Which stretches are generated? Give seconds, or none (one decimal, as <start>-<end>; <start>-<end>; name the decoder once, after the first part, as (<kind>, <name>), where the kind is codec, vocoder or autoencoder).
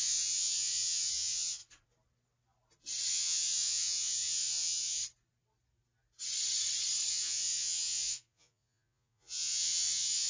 0.0-1.6 (vocoder, Vocos); 3.1-5.0; 7.1-10.3